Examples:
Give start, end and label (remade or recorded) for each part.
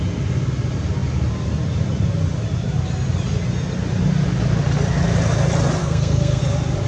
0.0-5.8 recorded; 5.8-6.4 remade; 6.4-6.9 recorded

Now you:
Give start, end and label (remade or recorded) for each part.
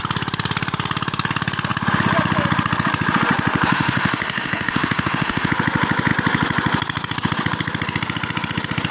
0.0-3.7 recorded; 3.7-5.5 remade; 5.5-8.9 recorded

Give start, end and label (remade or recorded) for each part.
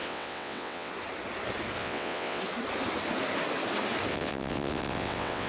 0.0-0.9 remade; 0.9-1.8 recorded; 1.8-2.4 remade; 2.4-4.1 recorded; 4.1-5.5 remade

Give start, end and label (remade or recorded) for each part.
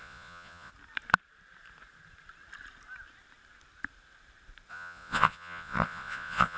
0.0-0.7 remade; 0.7-4.7 recorded; 4.7-6.6 remade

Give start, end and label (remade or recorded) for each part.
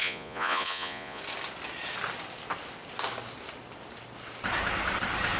0.0-1.2 remade; 1.2-5.4 recorded